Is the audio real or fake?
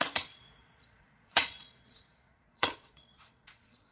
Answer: fake